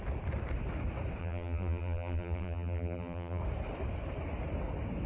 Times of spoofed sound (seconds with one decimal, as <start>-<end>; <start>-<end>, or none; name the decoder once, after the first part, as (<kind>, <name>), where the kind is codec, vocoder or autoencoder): 1.2-3.4 (vocoder, BigVGAN v2)